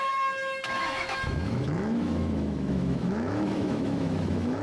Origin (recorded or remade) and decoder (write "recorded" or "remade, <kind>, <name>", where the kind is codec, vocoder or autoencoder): remade, autoencoder, DAC-VAE